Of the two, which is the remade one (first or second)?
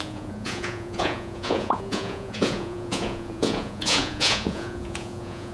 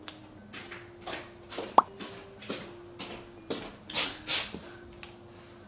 first